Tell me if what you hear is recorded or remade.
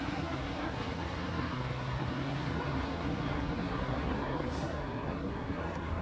remade